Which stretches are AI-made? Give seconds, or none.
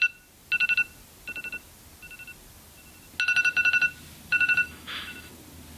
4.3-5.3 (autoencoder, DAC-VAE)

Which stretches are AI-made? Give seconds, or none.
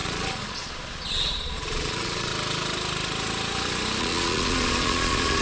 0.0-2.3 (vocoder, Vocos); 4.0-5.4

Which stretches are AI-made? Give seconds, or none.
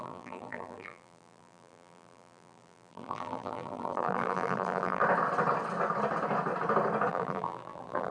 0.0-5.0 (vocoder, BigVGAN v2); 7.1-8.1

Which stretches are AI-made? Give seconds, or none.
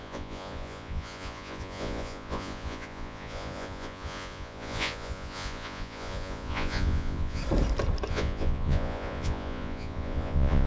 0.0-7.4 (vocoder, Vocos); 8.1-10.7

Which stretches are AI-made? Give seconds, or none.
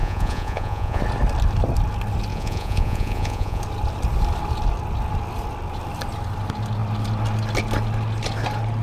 0.0-1.0 (vocoder, Vocos); 2.3-3.6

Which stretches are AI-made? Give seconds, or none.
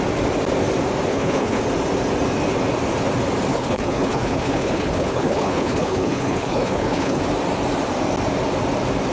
1.1-1.6 (codec, HILCodec); 3.5-7.2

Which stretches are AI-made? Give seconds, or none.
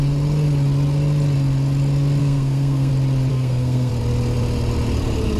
2.2-2.9 (codec, SNAC); 3.3-3.9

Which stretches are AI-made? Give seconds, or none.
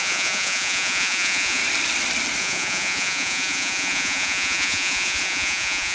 0.0-1.6 (vocoder, Vocos); 2.4-5.9